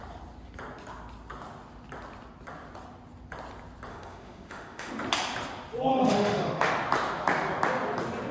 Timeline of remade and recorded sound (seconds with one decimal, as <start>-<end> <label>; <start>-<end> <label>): 0.0-3.9 recorded; 3.9-4.9 remade; 4.9-5.9 recorded; 5.9-6.7 remade; 6.7-8.3 recorded